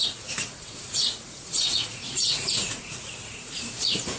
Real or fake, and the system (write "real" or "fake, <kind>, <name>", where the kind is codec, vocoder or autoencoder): fake, vocoder, Vocos